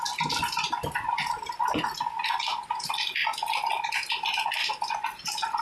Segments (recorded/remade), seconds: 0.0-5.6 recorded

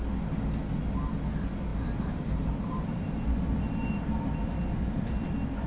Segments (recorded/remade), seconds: 0.0-1.7 recorded; 1.7-5.1 remade; 5.1-5.7 recorded

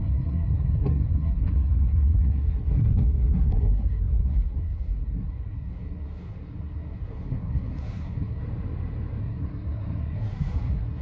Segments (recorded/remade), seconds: 0.0-8.4 remade; 8.4-9.2 recorded; 9.2-11.0 remade